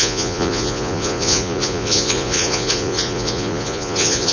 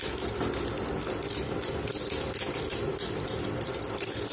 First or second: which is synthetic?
first